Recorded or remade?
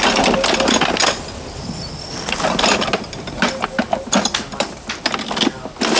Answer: recorded